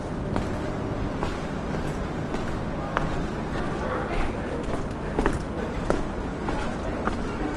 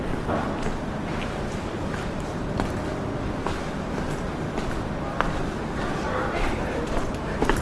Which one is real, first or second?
first